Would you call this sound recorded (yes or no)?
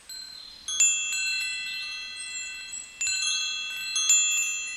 yes